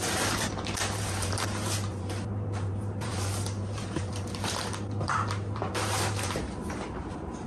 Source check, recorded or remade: remade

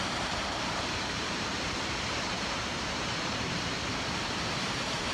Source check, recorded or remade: remade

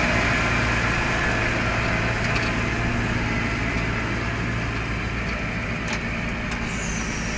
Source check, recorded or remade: recorded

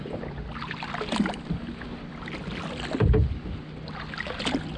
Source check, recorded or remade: recorded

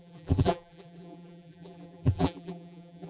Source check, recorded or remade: remade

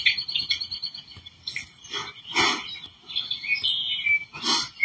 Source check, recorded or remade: recorded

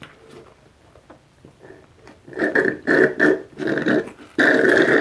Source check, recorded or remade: remade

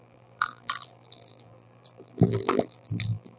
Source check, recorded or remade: remade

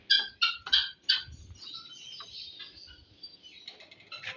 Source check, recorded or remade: recorded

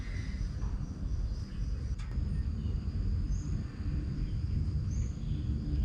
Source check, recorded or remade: recorded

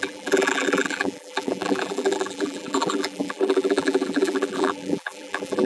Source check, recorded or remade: remade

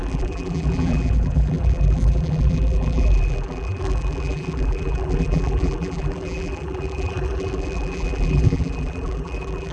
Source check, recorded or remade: remade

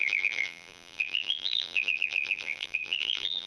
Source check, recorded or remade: remade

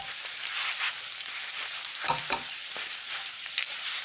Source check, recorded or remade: remade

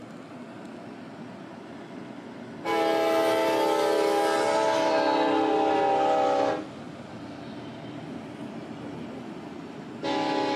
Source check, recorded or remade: recorded